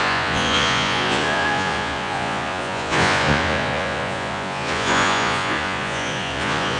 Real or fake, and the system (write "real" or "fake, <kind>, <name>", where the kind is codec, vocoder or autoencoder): fake, vocoder, Vocos